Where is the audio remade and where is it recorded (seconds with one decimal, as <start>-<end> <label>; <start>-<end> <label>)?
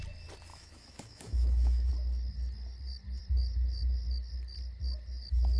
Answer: 0.0-0.5 recorded; 0.5-1.9 remade; 1.9-5.6 recorded